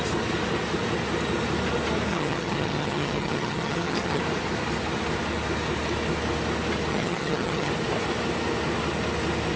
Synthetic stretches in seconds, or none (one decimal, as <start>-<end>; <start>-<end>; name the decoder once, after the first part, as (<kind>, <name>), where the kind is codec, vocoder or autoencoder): 2.1-4.2 (vocoder, HiFi-GAN); 6.9-7.7